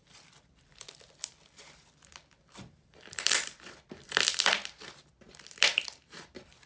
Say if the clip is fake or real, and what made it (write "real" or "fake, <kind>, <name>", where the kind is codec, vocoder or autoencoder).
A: fake, vocoder, BigVGAN v2